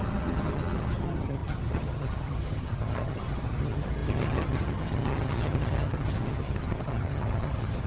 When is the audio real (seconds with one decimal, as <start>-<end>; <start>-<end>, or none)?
none